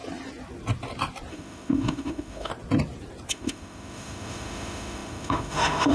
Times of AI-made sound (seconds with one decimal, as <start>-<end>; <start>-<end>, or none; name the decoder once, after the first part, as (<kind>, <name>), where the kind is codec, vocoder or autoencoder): 1.3-2.5 (autoencoder, DAC-VAE); 3.3-5.9